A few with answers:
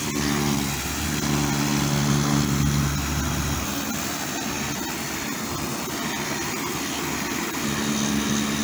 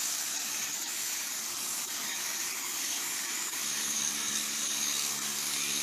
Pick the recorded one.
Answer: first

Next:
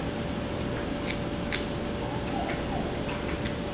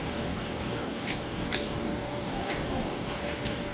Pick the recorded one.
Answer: first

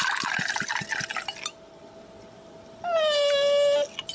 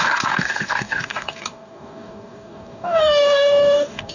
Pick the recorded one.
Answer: first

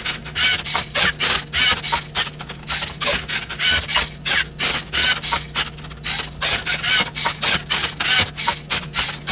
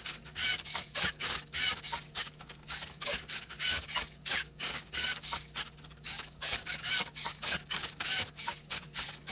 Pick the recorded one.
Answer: first